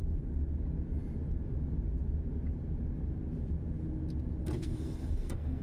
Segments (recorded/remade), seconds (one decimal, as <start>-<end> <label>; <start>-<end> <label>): 0.0-4.4 recorded; 4.4-5.6 remade

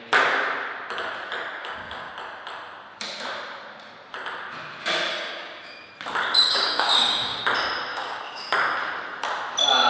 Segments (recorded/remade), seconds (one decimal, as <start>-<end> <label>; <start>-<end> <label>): 0.0-1.6 recorded; 1.6-2.1 remade; 2.1-5.1 recorded; 5.1-5.9 remade; 5.9-6.4 recorded; 6.4-7.4 remade; 7.4-7.9 recorded; 7.9-8.5 remade; 8.5-9.9 recorded

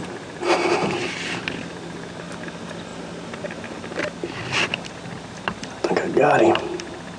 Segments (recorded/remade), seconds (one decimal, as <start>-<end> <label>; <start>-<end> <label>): 0.0-7.2 recorded